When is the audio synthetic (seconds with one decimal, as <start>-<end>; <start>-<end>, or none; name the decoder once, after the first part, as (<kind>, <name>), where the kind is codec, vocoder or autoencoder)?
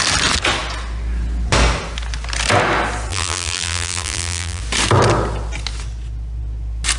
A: 3.1-4.6 (vocoder, BigVGAN v2)